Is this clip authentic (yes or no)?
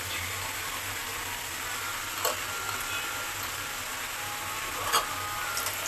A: yes